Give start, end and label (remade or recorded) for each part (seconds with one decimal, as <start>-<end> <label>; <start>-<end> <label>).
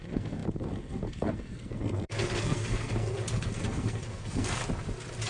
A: 0.0-4.6 remade; 4.6-5.3 recorded